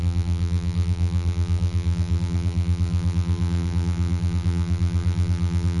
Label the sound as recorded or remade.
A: remade